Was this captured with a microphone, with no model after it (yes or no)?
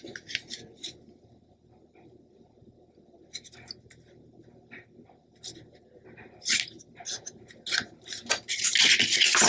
yes